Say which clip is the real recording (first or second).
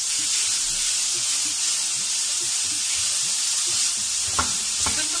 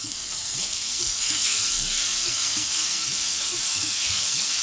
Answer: first